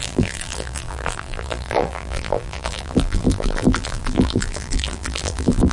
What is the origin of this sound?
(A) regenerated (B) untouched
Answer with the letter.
A